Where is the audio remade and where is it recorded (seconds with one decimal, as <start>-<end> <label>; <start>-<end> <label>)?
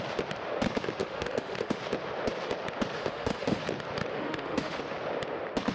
0.0-1.0 recorded; 1.0-1.8 remade; 1.8-3.0 recorded; 3.0-3.6 remade; 3.6-4.1 recorded; 4.1-4.8 remade; 4.8-5.7 recorded